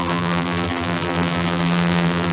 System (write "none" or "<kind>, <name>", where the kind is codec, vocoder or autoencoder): vocoder, BigVGAN v2